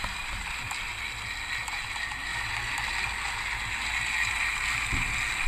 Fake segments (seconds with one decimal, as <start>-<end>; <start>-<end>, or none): 0.0-0.9; 1.8-2.3